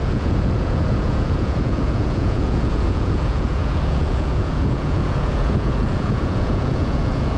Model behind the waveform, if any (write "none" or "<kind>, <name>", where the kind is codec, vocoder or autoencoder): vocoder, Vocos